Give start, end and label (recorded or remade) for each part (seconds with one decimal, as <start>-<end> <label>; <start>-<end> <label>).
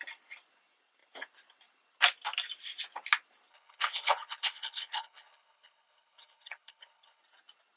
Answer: 0.0-3.5 recorded; 3.5-7.2 remade; 7.2-7.8 recorded